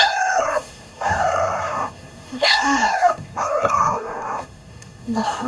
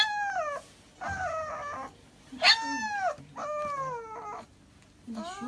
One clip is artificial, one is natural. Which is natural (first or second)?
second